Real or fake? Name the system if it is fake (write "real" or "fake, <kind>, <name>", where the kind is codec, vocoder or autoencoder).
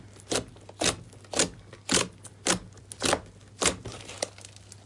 real